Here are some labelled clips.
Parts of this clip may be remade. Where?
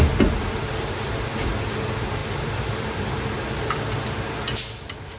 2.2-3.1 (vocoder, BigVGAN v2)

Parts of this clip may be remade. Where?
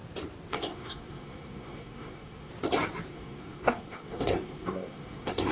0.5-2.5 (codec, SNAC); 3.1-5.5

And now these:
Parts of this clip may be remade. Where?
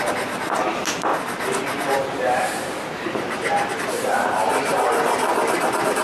1.1-4.7 (vocoder, BigVGAN v2); 5.3-6.0